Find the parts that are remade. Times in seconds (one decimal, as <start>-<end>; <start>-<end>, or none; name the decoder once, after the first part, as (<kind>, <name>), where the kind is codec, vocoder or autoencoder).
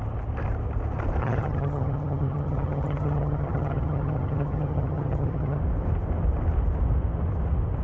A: 1.2-5.6 (vocoder, HiFi-GAN)